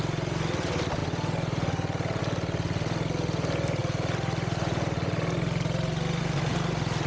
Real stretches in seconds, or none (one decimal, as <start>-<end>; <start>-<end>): 0.0-7.1